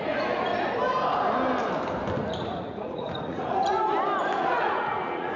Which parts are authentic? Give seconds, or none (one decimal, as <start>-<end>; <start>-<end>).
0.5-2.4; 3.7-4.3